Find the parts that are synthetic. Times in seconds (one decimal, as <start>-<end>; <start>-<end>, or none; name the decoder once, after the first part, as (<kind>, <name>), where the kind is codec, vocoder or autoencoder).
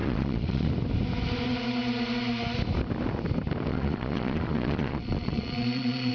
0.0-0.7 (vocoder, Vocos); 3.7-6.1